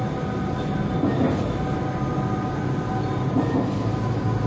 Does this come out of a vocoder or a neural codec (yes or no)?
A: no